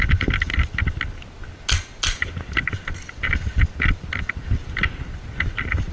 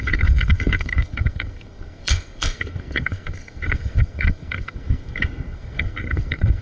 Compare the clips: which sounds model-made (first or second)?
second